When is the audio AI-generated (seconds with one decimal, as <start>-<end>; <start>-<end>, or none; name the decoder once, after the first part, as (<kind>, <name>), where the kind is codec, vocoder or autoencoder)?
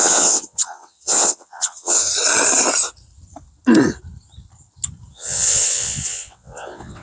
0.0-2.1 (vocoder, WaveNeXt); 5.1-7.0